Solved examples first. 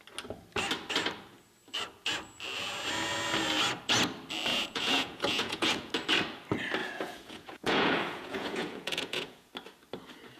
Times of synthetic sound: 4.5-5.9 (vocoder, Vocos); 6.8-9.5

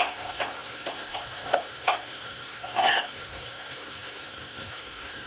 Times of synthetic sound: 0.0-5.3 (codec, SNAC)

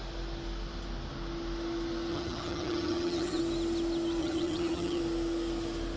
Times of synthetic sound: 2.1-3.4 (vocoder, HiFi-GAN); 4.2-5.0

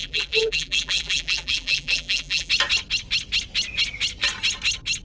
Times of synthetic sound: 0.0-2.5 (vocoder, BigVGAN v2)